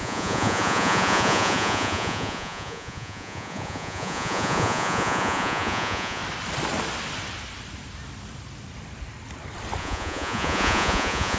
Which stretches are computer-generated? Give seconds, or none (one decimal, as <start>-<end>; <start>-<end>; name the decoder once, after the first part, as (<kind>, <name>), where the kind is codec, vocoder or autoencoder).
0.0-6.2 (vocoder, Vocos); 9.8-11.4